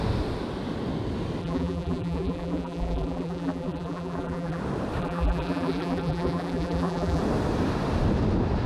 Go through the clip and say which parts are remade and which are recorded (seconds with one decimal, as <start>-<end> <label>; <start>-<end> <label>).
0.0-1.4 recorded; 1.4-4.6 remade; 4.6-5.0 recorded; 5.0-7.2 remade; 7.2-8.7 recorded